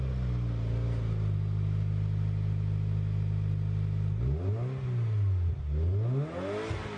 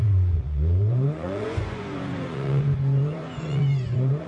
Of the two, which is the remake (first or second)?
second